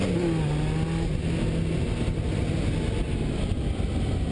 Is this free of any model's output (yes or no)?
yes